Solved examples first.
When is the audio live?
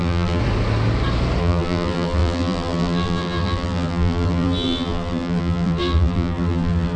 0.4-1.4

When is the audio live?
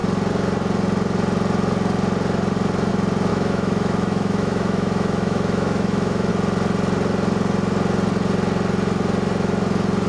0.0-3.3; 6.3-10.1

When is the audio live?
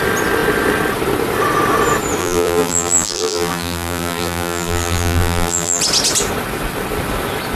0.0-2.2; 5.8-7.6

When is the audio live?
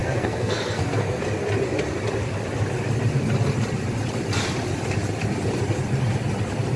1.2-6.8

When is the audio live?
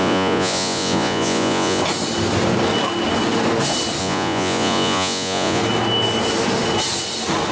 1.8-4.0; 5.6-7.5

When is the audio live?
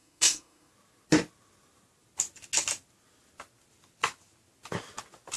0.7-5.4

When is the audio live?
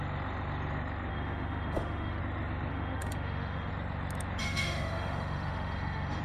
0.0-1.1; 2.2-2.7; 3.7-4.4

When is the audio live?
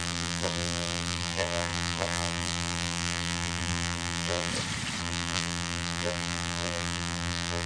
4.5-5.0